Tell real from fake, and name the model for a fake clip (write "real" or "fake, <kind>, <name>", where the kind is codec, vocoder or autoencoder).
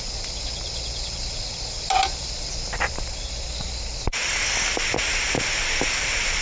real